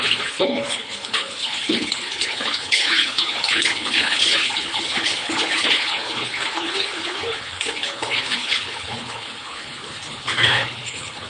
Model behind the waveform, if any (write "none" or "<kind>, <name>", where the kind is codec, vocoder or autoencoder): codec, HILCodec